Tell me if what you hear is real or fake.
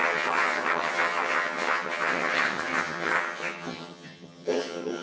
fake